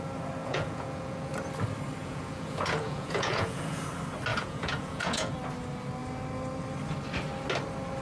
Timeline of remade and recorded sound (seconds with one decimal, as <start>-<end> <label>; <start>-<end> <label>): 0.0-0.4 recorded; 0.4-1.3 remade; 1.3-2.0 recorded; 2.0-3.8 remade; 3.8-4.3 recorded; 4.3-5.3 remade; 5.3-8.0 recorded

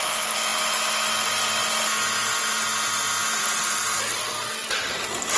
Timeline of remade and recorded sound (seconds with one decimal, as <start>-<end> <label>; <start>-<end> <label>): 0.0-5.4 recorded

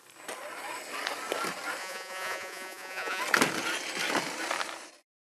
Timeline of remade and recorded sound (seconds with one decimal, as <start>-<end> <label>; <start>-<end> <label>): 0.0-1.8 recorded; 1.8-3.2 remade; 3.2-5.3 recorded

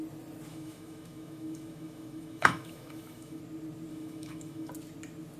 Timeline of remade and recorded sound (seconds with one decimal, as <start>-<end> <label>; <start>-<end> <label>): 0.0-0.5 recorded; 0.5-3.4 remade; 3.4-3.9 recorded; 3.9-4.7 remade; 4.7-5.4 recorded

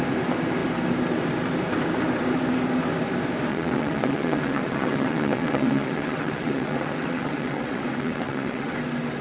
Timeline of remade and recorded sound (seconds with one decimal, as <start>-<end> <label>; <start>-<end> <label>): 0.0-3.5 recorded; 3.5-8.7 remade; 8.7-9.2 recorded

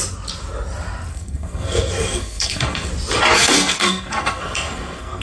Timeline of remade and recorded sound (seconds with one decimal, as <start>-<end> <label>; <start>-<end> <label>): 0.0-1.1 recorded; 1.1-2.9 remade; 2.9-3.4 recorded; 3.4-5.2 remade

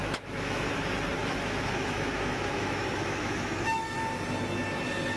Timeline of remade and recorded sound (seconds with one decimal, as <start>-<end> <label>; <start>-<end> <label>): 0.0-0.7 remade; 0.7-1.2 recorded; 1.2-4.0 remade; 4.0-5.2 recorded